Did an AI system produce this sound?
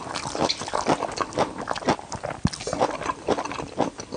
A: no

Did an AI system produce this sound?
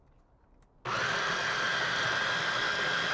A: no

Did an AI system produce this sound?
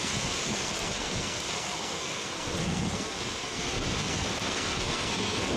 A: yes